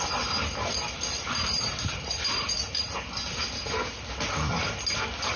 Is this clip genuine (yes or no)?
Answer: yes